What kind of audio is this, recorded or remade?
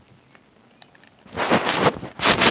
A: recorded